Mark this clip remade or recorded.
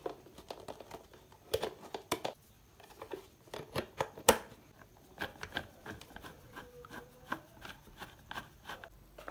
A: recorded